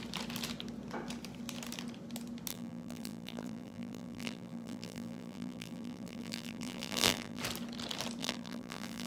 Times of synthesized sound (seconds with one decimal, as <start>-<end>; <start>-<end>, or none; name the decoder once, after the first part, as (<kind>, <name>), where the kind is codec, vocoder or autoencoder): 2.5-7.4 (vocoder, BigVGAN v2); 8.2-9.1